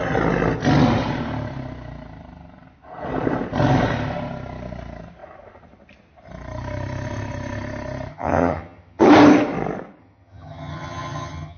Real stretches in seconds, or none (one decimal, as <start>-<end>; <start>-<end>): 0.0-8.1; 9.0-10.0